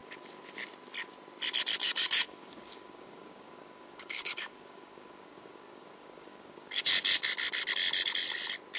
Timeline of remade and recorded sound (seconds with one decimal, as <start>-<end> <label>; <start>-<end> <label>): 0.0-1.8 recorded; 1.8-6.9 remade; 6.9-8.8 recorded